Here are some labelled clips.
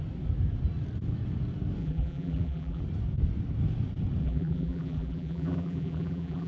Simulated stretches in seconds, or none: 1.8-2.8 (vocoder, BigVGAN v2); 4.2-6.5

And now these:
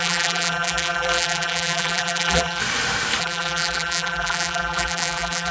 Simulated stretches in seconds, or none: 0.0-2.6 (vocoder, BigVGAN v2); 3.2-5.5

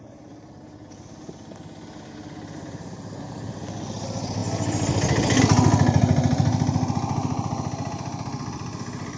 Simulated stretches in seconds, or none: none

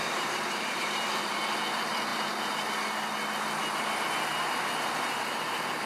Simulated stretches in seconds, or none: 0.0-1.2 (vocoder, BigVGAN v2)

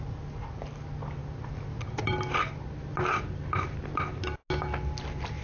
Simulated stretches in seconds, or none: 1.2-4.4 (vocoder, BigVGAN v2)

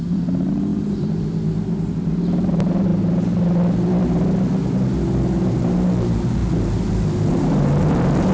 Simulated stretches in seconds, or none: 0.0-2.9 (vocoder, BigVGAN v2); 5.5-8.3

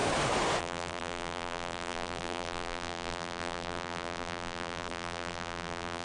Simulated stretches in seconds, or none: 0.6-6.0 (vocoder, BigVGAN v2)

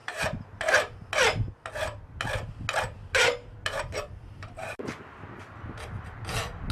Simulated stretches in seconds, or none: 0.0-0.6 (vocoder, BigVGAN v2)